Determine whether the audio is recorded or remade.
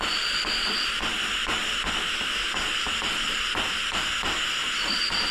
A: recorded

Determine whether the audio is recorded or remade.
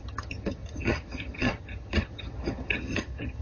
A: remade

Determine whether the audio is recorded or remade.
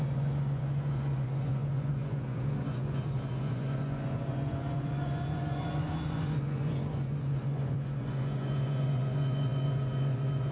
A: remade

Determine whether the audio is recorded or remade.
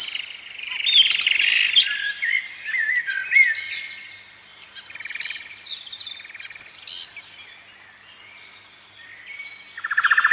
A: recorded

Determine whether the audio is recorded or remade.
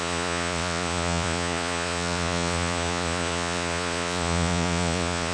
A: remade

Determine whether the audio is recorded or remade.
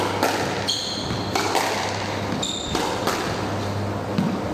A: recorded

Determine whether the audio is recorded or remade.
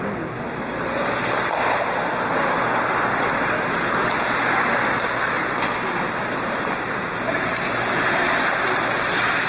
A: recorded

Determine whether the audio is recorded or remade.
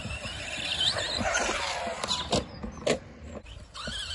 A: recorded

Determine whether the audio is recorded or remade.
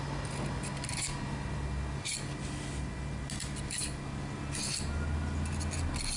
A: recorded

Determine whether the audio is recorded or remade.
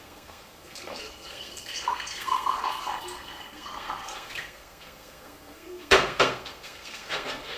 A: remade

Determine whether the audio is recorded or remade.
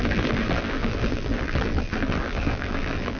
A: remade